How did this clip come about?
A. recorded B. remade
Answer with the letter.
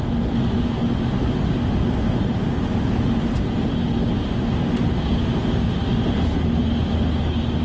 A